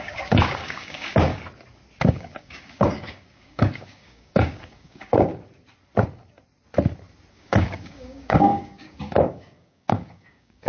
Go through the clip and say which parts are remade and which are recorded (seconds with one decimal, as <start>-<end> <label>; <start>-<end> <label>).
0.0-1.3 remade; 1.3-2.1 recorded; 2.1-5.3 remade; 5.3-7.3 recorded; 7.3-10.7 remade

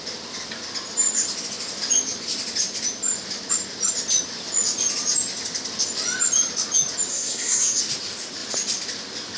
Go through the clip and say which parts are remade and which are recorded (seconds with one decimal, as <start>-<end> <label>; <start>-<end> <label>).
0.0-7.1 recorded; 7.1-7.8 remade; 7.8-9.4 recorded

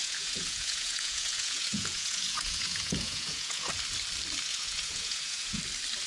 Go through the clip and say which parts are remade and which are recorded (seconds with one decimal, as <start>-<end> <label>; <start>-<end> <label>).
0.0-3.7 remade; 3.7-4.5 recorded; 4.5-5.6 remade; 5.6-6.1 recorded

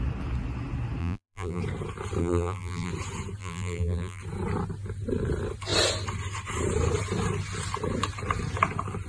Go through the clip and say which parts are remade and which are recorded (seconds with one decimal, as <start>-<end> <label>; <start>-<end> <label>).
0.0-1.0 recorded; 1.0-1.6 remade; 1.6-2.2 recorded; 2.2-2.9 remade; 2.9-3.4 recorded; 3.4-4.2 remade; 4.2-9.1 recorded

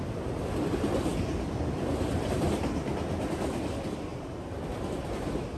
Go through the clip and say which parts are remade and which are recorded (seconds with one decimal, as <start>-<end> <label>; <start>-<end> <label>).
0.0-5.6 recorded

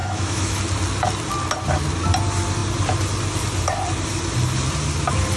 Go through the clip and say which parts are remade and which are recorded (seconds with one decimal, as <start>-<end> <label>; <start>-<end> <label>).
0.0-0.6 remade; 0.6-5.4 recorded

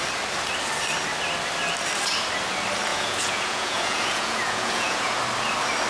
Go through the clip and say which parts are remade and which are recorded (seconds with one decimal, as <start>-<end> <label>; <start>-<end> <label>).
0.0-2.9 recorded; 2.9-5.2 remade; 5.2-5.9 recorded